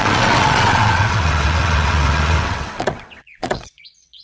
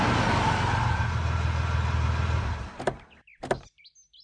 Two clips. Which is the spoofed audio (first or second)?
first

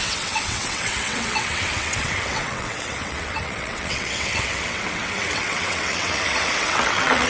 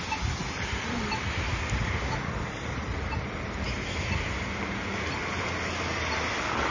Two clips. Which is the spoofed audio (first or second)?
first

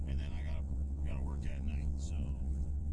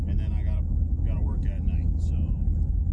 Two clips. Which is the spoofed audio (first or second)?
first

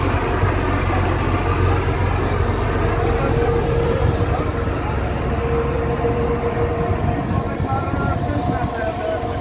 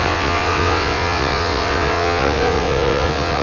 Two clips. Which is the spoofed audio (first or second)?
second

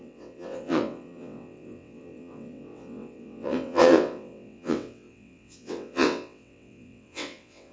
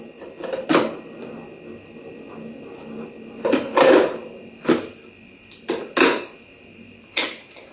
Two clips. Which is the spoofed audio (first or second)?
first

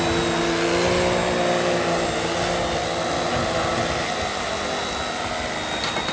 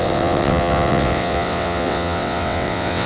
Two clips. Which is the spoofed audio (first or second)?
second